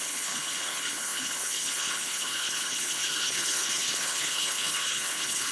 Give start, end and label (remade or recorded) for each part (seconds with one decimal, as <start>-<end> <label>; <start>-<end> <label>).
0.0-5.5 remade

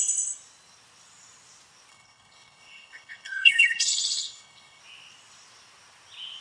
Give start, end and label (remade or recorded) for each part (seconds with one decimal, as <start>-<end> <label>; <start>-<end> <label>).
0.0-1.9 recorded; 1.9-4.8 remade; 4.8-6.4 recorded

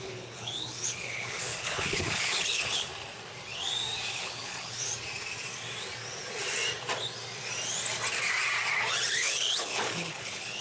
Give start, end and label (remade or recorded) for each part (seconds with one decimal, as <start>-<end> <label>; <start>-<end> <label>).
0.0-2.9 remade; 2.9-4.1 recorded; 4.1-4.9 remade; 4.9-9.1 recorded; 9.1-10.6 remade

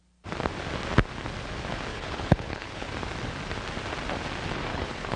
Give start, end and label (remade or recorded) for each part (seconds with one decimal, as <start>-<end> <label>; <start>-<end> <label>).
0.0-1.9 recorded; 1.9-2.9 remade; 2.9-4.7 recorded; 4.7-5.2 remade

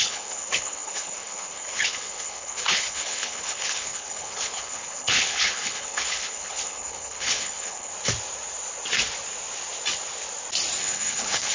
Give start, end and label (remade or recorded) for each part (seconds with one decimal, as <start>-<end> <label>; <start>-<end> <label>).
0.0-7.9 remade; 7.9-10.8 recorded; 10.8-11.5 remade

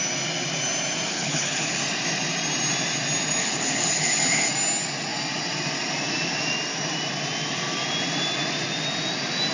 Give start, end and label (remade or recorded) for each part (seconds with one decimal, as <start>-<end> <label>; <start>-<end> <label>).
0.0-1.1 recorded; 1.1-1.8 remade; 1.8-3.4 recorded; 3.4-4.5 remade; 4.5-9.5 recorded